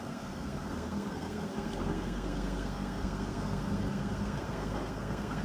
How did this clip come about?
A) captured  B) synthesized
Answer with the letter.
B